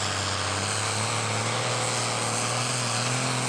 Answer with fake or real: real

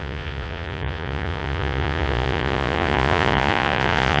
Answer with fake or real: fake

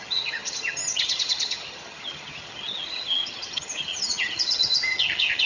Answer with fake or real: fake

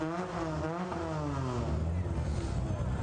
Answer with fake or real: real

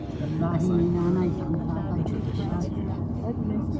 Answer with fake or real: real